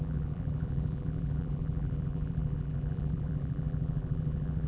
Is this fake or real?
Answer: fake